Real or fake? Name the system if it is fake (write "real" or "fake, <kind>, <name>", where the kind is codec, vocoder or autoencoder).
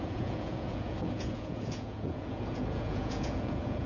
fake, vocoder, Vocos